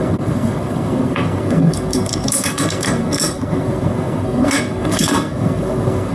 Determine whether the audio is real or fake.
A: fake